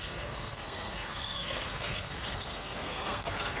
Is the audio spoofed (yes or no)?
yes